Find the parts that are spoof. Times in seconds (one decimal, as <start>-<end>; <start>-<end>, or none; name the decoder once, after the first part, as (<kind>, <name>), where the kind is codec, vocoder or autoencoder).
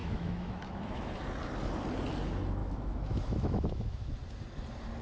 0.0-1.2 (autoencoder, DAC-VAE); 2.6-4.1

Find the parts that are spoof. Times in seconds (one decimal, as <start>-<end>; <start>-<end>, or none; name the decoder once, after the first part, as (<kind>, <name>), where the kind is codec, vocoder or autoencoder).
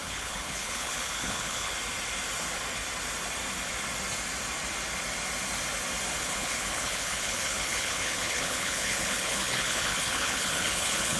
0.0-1.7 (codec, HILCodec); 6.2-11.2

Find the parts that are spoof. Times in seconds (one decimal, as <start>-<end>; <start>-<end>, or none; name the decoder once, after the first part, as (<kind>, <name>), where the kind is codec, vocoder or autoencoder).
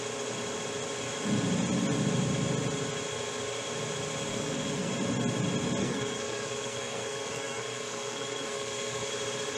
4.3-4.9 (codec, SNAC); 5.8-9.1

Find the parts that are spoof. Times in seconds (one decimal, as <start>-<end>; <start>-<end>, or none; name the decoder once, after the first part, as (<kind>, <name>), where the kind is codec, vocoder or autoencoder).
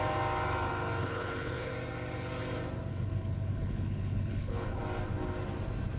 1.0-1.7 (codec, HILCodec); 2.9-4.8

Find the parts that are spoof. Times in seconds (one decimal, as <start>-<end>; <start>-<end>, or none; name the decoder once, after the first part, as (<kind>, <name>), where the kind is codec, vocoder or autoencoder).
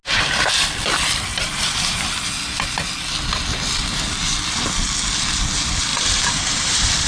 1.3-2.3 (vocoder, BigVGAN v2); 5.9-7.1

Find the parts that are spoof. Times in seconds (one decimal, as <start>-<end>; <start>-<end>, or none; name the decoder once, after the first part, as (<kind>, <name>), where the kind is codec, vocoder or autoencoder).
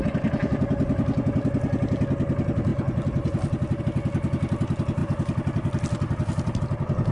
2.7-3.8 (vocoder, BigVGAN v2); 5.0-6.6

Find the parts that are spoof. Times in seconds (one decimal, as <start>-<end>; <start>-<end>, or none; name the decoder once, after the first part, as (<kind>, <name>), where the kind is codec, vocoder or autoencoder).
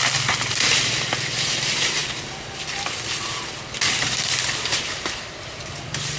none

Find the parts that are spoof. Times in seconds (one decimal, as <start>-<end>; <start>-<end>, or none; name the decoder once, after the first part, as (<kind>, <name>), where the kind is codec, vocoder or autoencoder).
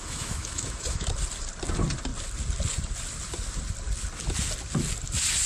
0.0-1.1 (autoencoder, DAC-VAE)